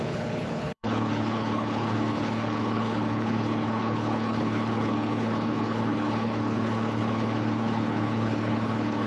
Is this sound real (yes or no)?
no